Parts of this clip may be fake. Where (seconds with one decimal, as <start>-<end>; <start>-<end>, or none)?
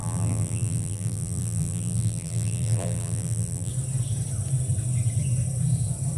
0.0-3.7